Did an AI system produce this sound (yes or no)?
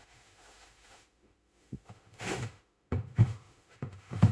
yes